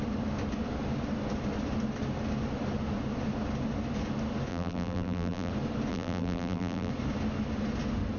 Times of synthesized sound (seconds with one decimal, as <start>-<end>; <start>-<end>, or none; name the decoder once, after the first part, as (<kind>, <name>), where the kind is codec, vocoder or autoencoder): 4.5-5.5 (vocoder, BigVGAN v2); 5.9-6.9